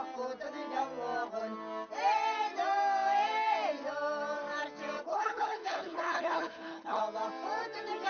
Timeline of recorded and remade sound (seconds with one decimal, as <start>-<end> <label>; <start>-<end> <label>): 0.0-5.1 recorded; 5.1-7.0 remade; 7.0-8.1 recorded